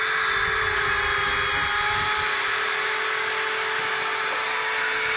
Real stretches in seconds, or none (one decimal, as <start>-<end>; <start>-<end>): 0.0-5.2